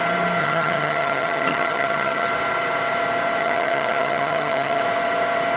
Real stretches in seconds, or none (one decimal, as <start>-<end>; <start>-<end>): 0.0-0.4; 2.3-3.4; 4.8-5.6